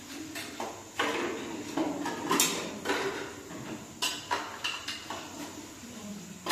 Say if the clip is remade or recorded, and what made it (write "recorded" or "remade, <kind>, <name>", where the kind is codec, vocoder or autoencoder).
recorded